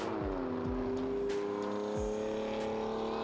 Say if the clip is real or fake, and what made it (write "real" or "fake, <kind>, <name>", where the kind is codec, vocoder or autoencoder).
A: real